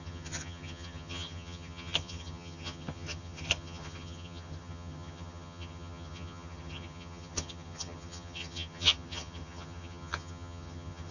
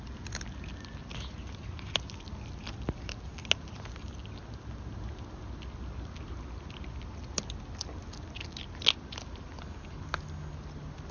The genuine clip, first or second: second